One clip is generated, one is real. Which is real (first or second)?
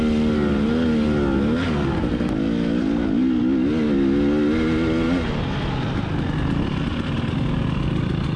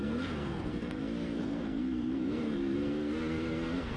first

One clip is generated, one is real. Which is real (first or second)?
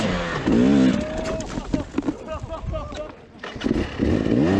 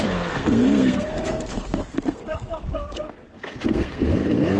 first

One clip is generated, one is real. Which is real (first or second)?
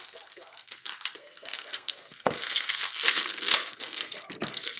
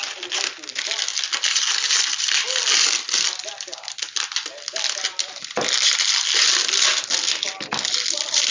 second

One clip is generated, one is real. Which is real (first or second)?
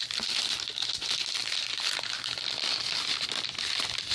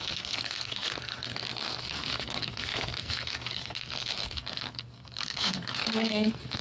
first